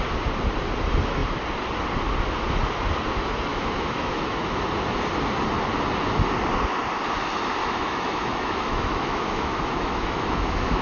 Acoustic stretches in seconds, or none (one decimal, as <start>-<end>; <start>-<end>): 0.0-3.5; 4.6-7.6